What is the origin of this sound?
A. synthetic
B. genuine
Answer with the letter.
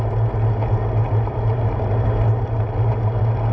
B